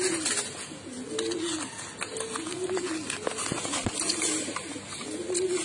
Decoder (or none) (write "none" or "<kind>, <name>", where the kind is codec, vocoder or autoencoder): none